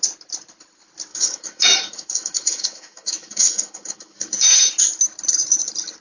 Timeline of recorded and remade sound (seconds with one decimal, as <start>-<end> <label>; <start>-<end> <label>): 0.0-1.1 recorded; 1.1-4.7 remade; 4.7-6.0 recorded